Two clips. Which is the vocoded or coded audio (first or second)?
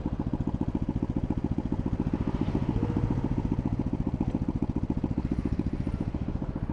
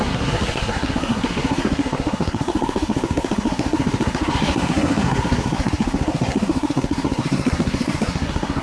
second